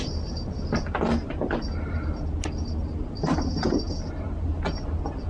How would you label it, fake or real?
real